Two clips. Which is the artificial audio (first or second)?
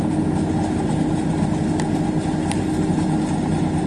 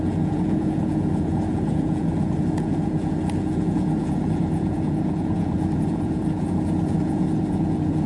second